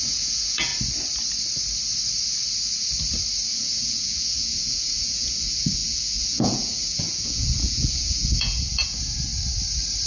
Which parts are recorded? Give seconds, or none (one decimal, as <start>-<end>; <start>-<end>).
0.7-3.5; 9.3-10.1